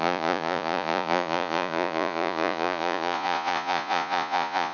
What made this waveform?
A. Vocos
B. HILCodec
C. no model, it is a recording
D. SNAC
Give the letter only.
A